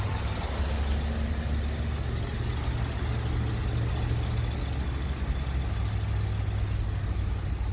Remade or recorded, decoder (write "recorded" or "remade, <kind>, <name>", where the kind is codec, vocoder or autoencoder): recorded